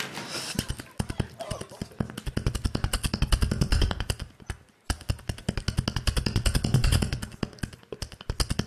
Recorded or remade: recorded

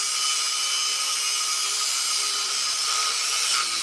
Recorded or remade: recorded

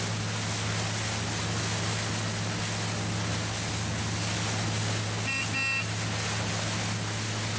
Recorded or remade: recorded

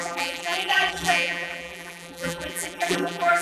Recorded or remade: remade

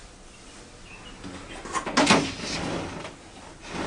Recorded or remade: recorded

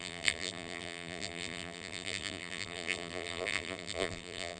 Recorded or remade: remade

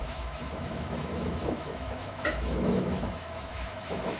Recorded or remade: remade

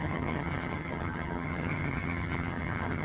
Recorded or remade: remade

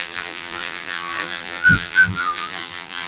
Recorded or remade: remade